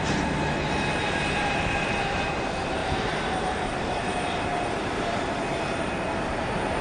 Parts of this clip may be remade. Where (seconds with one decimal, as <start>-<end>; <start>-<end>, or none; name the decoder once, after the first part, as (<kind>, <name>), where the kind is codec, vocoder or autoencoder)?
1.0-2.3 (vocoder, BigVGAN v2); 2.8-6.8